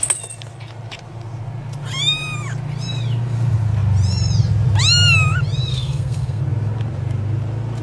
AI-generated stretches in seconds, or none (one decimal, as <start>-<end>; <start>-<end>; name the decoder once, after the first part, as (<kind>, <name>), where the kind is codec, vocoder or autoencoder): 5.7-6.4 (codec, SNAC)